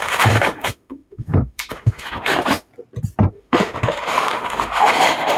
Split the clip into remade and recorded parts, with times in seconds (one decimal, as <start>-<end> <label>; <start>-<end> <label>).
0.0-2.7 remade; 2.7-3.3 recorded; 3.3-5.4 remade